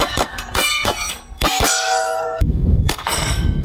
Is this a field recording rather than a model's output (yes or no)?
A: no